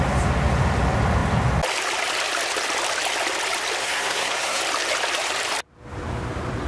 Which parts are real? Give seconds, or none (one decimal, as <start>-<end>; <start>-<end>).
0.0-3.8; 4.6-6.7